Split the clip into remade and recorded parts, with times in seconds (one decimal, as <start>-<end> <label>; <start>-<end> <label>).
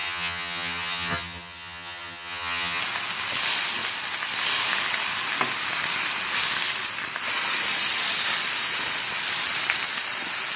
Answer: 0.0-2.8 remade; 2.8-10.6 recorded